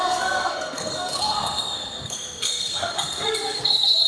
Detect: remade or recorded remade